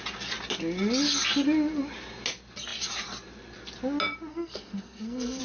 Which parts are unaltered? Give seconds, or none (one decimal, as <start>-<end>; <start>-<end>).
0.0-4.3